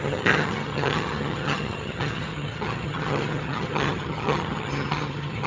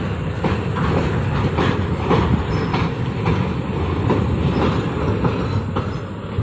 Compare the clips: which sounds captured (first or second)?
second